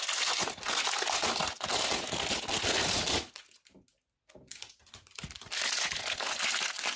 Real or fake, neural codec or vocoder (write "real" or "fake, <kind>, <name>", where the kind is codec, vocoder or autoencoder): real